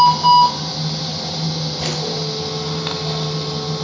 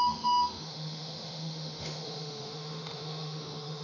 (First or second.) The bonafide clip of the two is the first